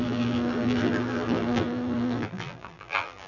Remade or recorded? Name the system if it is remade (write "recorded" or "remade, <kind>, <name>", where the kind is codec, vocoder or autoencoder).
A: remade, vocoder, BigVGAN v2